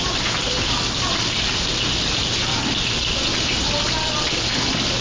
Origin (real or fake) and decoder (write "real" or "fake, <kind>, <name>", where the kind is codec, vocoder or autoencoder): real